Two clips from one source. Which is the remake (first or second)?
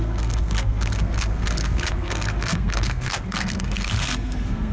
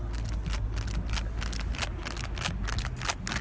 first